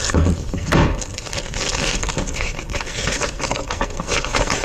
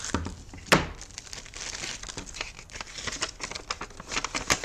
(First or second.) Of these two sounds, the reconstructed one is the first